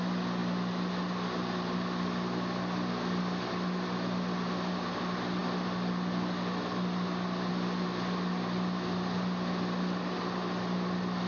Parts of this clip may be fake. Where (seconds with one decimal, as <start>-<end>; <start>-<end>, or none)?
none